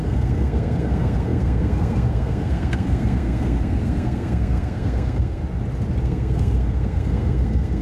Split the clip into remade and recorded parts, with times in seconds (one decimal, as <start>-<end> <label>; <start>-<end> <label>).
0.0-5.4 remade; 5.4-6.0 recorded; 6.0-7.8 remade

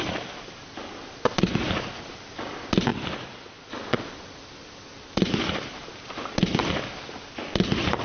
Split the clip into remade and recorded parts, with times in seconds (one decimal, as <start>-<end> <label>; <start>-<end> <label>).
0.0-2.9 remade; 2.9-3.7 recorded; 3.7-8.0 remade

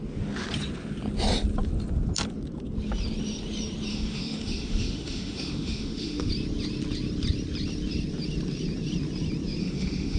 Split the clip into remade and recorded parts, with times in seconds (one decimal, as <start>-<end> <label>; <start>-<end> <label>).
0.0-3.9 recorded; 3.9-6.3 remade; 6.3-9.6 recorded; 9.6-10.2 remade

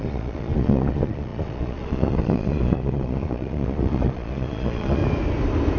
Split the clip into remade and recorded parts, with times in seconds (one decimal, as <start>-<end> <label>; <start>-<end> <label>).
0.0-5.0 remade; 5.0-5.8 recorded

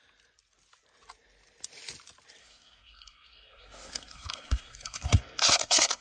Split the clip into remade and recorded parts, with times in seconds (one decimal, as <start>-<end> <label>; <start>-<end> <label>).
0.0-2.4 recorded; 2.4-6.0 remade